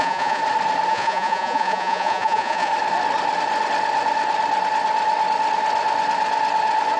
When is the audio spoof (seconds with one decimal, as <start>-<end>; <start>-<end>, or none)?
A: 0.0-0.4; 0.9-2.7